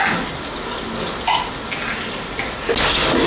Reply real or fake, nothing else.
real